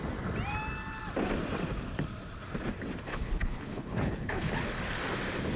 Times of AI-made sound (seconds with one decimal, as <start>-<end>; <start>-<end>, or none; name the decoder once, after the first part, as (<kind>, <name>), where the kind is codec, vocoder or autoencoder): 3.1-4.5 (codec, HILCodec)